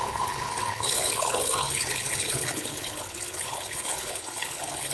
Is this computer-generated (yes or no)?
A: yes